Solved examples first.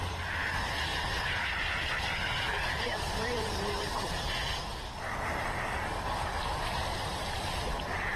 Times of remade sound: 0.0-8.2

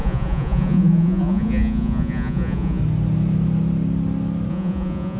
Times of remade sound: 0.0-2.8; 4.5-5.2

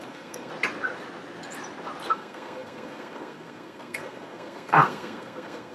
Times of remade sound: 0.0-0.5; 2.1-5.7

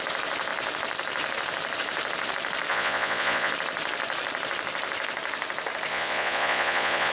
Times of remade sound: 2.7-3.5; 5.9-7.1

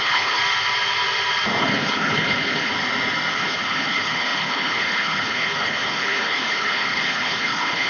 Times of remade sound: 0.0-0.4; 1.6-2.7; 3.3-7.9

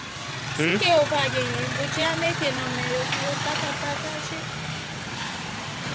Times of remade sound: 0.7-1.3; 2.0-5.5

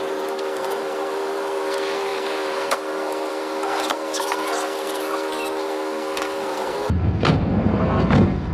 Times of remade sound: 0.0-8.5

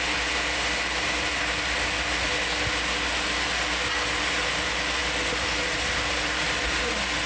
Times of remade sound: none